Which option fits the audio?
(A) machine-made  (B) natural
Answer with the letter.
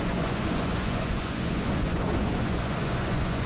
A